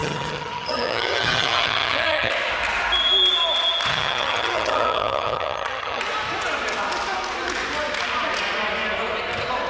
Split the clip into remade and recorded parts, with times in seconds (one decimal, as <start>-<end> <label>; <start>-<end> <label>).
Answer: 0.0-2.3 remade; 2.3-3.9 recorded; 3.9-6.0 remade; 6.0-9.7 recorded